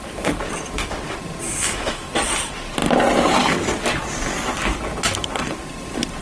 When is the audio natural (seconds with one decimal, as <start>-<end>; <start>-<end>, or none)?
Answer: 0.0-1.4; 2.1-6.2